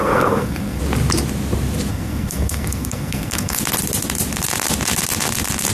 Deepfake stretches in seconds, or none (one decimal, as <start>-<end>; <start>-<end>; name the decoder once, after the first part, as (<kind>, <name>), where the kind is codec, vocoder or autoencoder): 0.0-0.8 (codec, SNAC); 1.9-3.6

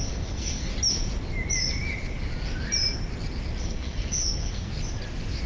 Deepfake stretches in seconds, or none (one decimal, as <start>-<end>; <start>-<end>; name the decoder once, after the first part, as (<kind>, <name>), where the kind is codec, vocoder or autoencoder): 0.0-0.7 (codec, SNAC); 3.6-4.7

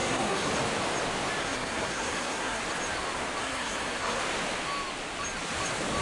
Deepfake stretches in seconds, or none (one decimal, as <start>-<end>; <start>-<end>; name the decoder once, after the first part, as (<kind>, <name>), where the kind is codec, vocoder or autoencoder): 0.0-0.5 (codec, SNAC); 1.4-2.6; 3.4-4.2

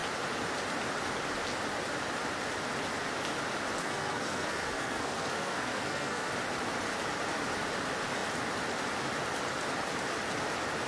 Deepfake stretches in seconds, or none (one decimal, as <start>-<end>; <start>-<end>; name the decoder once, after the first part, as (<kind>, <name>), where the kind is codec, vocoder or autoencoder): 3.8-6.3 (codec, SNAC)